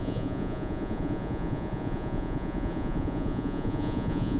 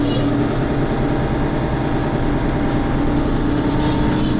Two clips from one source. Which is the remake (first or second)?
first